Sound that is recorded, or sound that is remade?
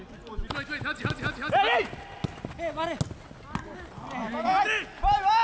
recorded